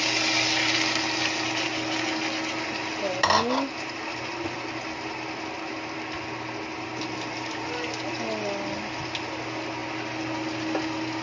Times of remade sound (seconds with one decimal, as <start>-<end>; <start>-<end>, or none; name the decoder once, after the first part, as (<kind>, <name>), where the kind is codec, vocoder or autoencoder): none